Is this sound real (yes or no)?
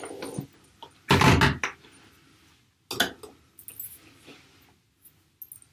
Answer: yes